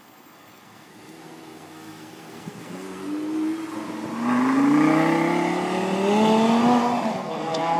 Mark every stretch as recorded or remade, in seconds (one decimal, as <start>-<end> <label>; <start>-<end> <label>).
0.0-3.0 remade; 3.0-7.1 recorded; 7.1-7.8 remade